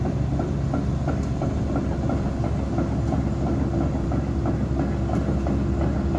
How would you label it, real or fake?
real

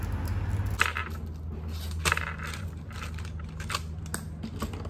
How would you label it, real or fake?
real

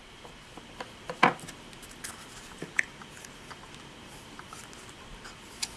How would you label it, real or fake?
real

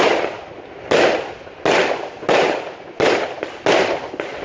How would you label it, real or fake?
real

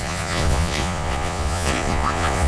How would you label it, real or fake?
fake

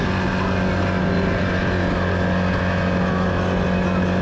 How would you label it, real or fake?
real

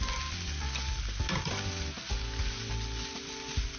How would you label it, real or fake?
real